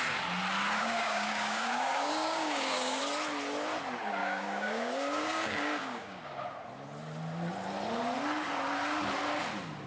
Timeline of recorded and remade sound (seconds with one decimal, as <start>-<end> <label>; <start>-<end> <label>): 0.0-0.8 recorded; 0.8-3.0 remade; 3.0-4.2 recorded; 4.2-6.2 remade; 6.2-9.9 recorded